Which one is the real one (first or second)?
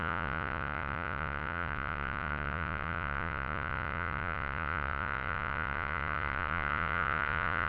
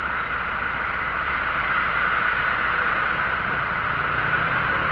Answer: second